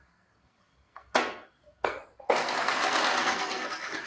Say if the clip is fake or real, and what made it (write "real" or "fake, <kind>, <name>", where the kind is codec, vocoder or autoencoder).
fake, codec, SNAC